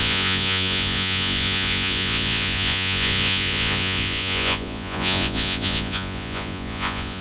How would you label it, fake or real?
fake